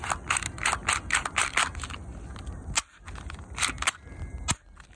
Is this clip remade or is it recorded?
recorded